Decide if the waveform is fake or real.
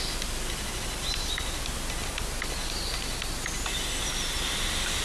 real